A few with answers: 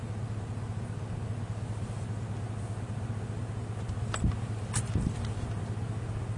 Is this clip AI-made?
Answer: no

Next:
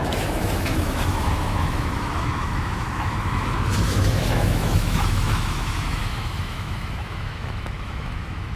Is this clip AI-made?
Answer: yes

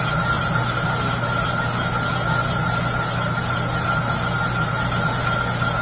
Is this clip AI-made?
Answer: no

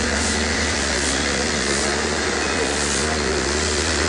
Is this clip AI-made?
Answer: yes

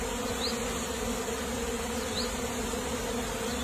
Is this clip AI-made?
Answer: no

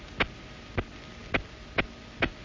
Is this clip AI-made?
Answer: no